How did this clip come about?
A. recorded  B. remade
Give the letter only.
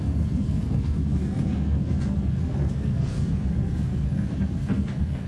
B